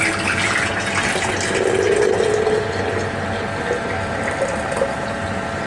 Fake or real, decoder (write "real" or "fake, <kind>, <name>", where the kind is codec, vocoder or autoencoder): real